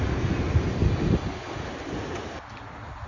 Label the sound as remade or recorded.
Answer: recorded